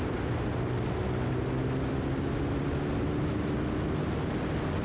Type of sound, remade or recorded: recorded